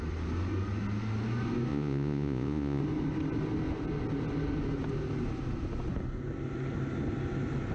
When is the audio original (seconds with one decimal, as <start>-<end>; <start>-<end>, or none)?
0.0-1.7; 2.8-7.7